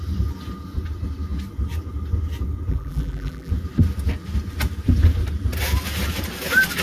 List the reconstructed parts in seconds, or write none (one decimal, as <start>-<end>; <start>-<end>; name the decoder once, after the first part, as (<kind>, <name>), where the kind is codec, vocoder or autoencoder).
2.7-3.5 (vocoder, BigVGAN v2)